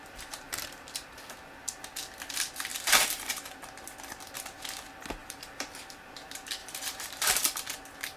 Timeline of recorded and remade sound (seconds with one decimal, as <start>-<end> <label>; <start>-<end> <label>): 0.0-2.7 recorded; 2.7-3.6 remade; 3.6-5.2 recorded; 5.2-6.1 remade; 6.1-6.6 recorded; 6.6-7.4 remade; 7.4-8.2 recorded